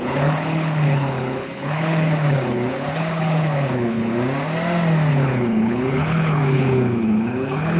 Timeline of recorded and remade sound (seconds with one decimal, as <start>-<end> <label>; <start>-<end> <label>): 0.0-4.1 remade; 4.1-5.1 recorded; 5.1-7.8 remade